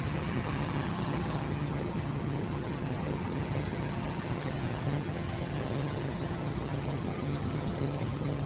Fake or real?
fake